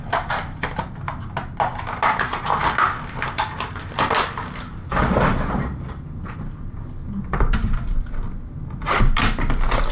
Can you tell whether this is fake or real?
real